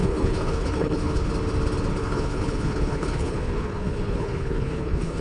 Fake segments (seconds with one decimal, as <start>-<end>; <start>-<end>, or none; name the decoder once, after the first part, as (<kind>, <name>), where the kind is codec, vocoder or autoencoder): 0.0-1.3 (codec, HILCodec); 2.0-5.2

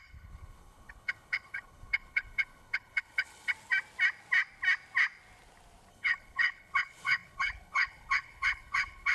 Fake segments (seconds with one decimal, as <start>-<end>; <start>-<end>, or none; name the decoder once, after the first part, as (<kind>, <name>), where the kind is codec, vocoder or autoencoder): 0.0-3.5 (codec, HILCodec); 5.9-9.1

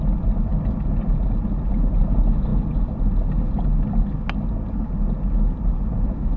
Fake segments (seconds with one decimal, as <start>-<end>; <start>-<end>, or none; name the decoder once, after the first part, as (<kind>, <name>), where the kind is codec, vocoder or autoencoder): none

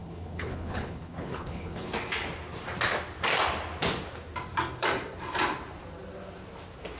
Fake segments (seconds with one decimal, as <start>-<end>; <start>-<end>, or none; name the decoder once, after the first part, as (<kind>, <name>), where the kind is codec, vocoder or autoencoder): 0.0-1.9 (codec, HILCodec)

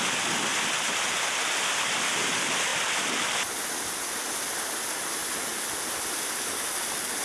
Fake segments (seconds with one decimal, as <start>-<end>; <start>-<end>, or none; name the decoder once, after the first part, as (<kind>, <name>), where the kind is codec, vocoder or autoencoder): none

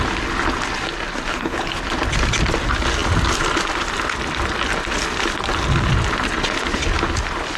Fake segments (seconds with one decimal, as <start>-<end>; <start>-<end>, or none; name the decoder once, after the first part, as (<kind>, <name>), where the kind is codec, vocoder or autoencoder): 1.3-1.8 (codec, HILCodec)